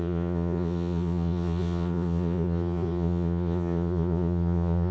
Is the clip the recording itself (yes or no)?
no